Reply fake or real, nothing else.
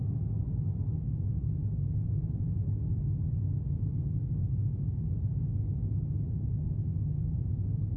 fake